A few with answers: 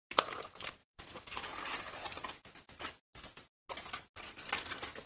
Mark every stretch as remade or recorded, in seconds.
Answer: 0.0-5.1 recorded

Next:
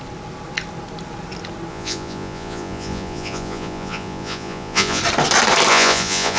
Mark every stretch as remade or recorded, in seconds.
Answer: 0.0-1.7 recorded; 1.7-5.0 remade; 5.0-5.7 recorded; 5.7-6.4 remade

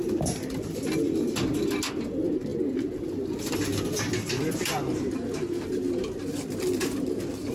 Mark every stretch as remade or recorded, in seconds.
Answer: 0.0-7.5 recorded

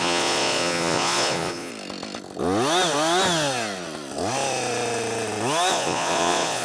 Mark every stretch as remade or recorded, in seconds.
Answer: 0.0-1.7 remade; 1.7-5.7 recorded; 5.7-6.6 remade

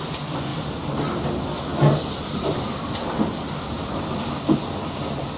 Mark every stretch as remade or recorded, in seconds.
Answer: 0.0-5.4 recorded

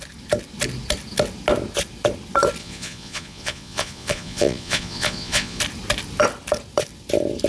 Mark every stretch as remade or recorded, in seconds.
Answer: 0.0-2.6 recorded; 2.6-5.6 remade; 5.6-7.5 recorded